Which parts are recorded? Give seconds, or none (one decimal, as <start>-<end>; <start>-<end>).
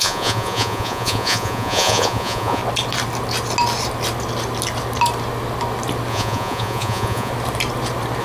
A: 2.6-6.1; 7.3-8.2